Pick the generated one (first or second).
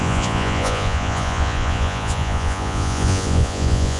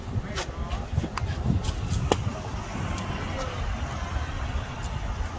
first